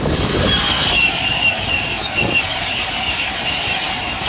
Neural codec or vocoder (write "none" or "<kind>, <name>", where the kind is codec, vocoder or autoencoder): codec, DAC